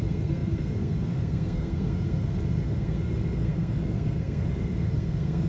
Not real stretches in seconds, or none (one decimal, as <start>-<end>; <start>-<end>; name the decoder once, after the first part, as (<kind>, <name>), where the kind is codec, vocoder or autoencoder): 0.0-5.5 (codec, SNAC)